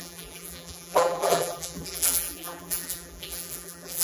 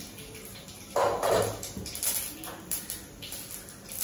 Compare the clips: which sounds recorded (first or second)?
second